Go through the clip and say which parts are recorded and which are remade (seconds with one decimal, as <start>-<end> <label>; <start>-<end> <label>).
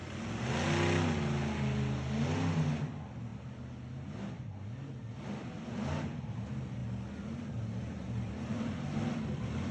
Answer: 0.0-6.8 recorded; 6.8-9.7 remade